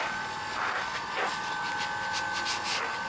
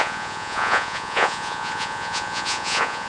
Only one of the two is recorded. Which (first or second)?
first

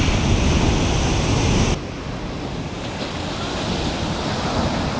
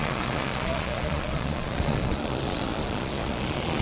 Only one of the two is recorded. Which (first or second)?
first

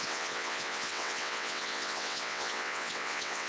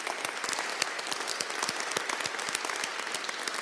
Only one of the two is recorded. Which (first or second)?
second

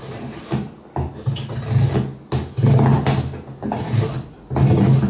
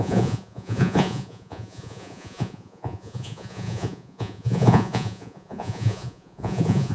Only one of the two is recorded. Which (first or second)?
first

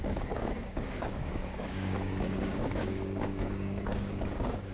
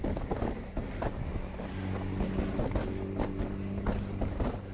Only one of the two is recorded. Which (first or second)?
second